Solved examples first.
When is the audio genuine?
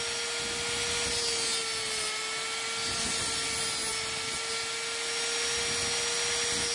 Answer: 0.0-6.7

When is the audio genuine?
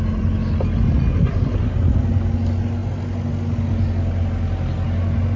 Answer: 0.0-5.4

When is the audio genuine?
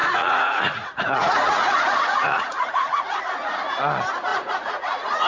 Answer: 3.2-4.3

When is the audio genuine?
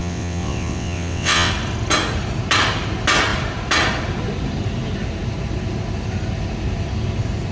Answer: 1.5-7.5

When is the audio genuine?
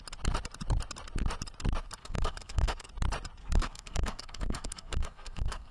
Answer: 0.0-2.0; 2.9-3.4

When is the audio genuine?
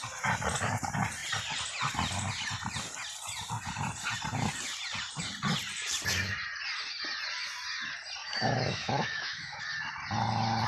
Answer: 0.0-8.2; 9.6-10.7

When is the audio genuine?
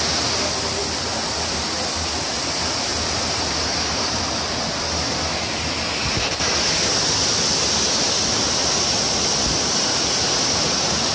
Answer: 0.0-2.9; 4.2-11.1